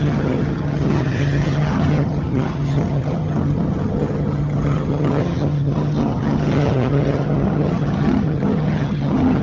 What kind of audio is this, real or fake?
fake